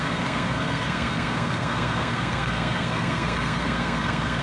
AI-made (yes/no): yes